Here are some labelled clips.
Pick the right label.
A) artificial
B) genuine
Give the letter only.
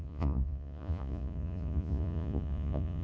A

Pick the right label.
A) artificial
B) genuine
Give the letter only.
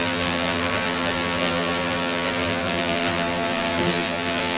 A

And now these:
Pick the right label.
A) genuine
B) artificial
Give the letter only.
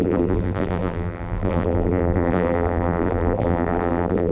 B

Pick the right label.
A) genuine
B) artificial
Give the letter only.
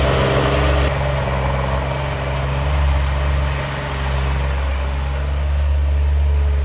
A